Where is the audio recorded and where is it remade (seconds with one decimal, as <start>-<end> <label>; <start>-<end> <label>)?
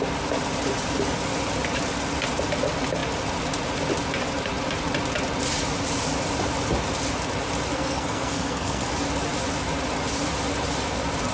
0.0-7.7 recorded; 7.7-8.9 remade; 8.9-11.3 recorded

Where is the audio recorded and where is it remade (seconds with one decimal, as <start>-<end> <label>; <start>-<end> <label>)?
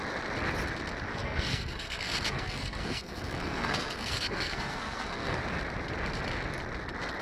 0.0-1.1 recorded; 1.1-5.4 remade; 5.4-7.2 recorded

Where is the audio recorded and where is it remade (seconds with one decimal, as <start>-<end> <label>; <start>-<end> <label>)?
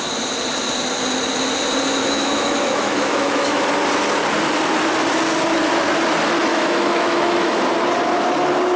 0.0-2.0 recorded; 2.0-3.6 remade; 3.6-6.5 recorded; 6.5-7.6 remade; 7.6-8.8 recorded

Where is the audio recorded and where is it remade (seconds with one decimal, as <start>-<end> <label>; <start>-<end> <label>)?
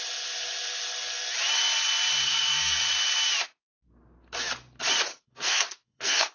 0.0-2.2 recorded; 2.2-2.8 remade; 2.8-5.1 recorded; 5.1-6.3 remade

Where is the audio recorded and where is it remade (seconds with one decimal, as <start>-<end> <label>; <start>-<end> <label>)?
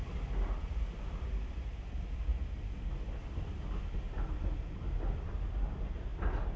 0.0-6.6 recorded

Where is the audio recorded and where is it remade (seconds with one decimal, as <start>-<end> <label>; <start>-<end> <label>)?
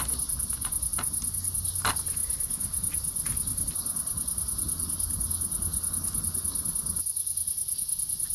0.0-8.3 recorded